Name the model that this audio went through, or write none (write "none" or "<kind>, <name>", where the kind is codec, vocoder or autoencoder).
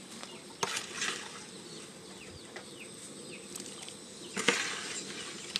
none